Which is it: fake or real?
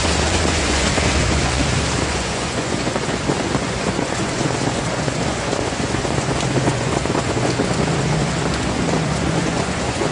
fake